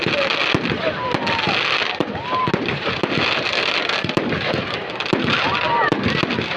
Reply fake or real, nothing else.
real